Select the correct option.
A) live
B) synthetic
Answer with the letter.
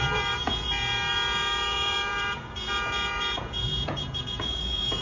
B